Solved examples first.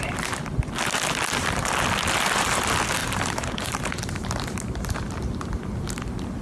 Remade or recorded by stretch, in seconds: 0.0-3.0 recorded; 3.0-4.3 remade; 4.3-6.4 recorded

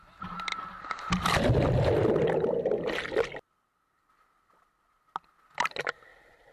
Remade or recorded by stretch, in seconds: 0.0-6.5 recorded

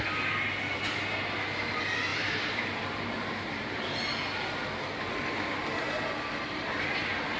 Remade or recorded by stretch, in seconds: 0.0-2.1 recorded; 2.1-4.0 remade; 4.0-7.4 recorded

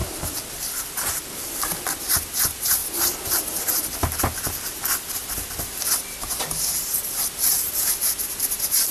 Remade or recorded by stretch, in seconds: 0.0-2.0 recorded; 2.0-2.8 remade; 2.8-7.7 recorded; 7.7-8.9 remade